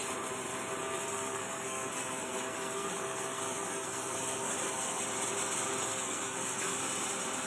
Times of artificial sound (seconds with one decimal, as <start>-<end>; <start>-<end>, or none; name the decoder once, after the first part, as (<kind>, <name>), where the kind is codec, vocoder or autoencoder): 0.8-5.0 (codec, SNAC); 5.9-6.8